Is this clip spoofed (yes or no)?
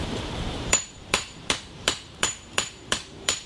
yes